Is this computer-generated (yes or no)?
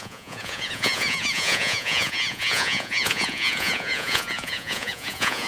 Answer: yes